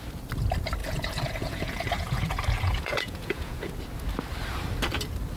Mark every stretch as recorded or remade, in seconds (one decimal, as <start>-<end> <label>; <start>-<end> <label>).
0.0-0.8 recorded; 0.8-3.7 remade; 3.7-5.4 recorded